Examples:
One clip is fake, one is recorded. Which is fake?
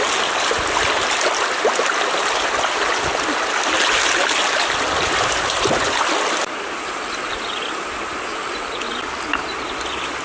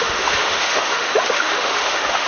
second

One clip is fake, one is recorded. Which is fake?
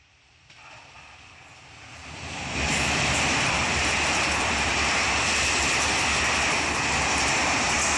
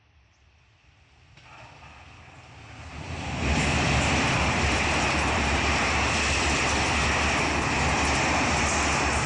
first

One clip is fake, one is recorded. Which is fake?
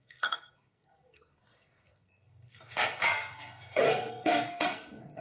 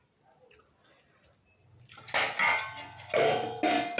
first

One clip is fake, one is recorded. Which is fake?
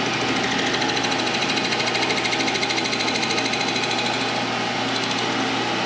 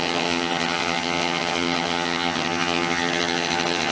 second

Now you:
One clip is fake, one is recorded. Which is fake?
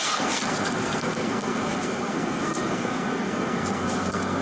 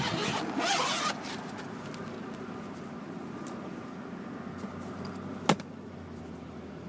first